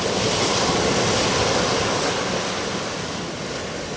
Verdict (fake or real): real